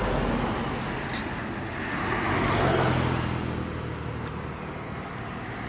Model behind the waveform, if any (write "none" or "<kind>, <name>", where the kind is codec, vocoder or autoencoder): none